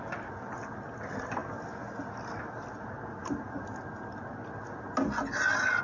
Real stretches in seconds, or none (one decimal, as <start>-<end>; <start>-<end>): 0.0-5.8